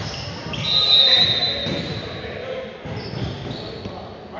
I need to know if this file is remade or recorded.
recorded